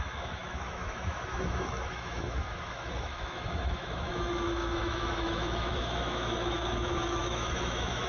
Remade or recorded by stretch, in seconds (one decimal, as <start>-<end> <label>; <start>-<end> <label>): 0.0-8.1 remade